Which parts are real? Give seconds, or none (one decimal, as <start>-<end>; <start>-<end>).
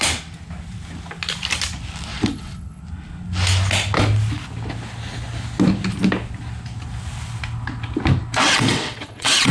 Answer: 0.0-2.1; 2.8-8.4